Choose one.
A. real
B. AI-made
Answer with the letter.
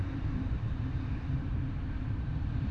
B